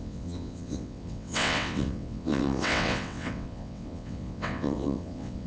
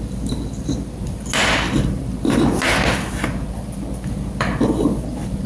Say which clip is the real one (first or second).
second